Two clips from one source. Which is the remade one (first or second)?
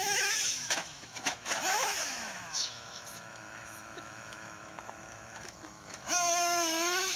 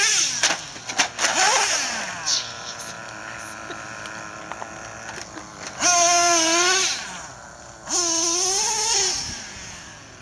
first